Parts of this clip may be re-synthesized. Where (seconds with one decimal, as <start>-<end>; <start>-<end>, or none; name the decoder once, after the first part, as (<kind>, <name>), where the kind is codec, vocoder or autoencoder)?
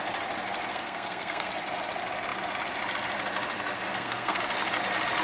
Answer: 0.7-1.5 (codec, SNAC); 3.9-4.4